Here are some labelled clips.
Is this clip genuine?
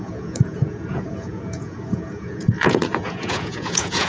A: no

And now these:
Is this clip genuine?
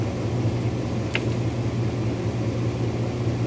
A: yes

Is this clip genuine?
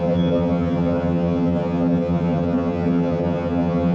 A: no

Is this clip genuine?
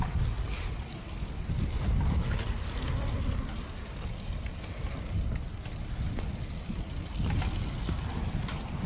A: yes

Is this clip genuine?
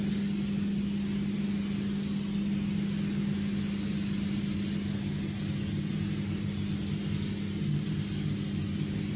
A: yes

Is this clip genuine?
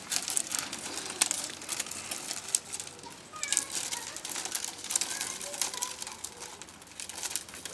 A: yes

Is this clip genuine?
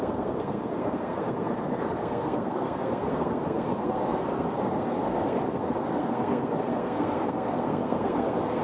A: no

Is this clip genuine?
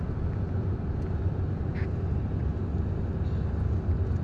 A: yes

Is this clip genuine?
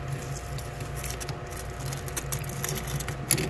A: yes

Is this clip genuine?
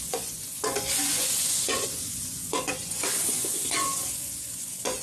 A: no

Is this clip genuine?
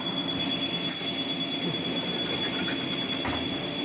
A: yes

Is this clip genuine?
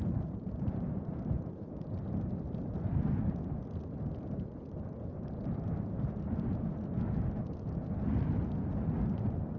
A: yes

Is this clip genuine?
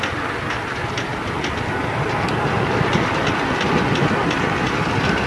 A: yes